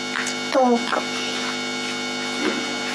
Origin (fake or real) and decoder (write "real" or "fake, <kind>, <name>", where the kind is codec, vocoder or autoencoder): real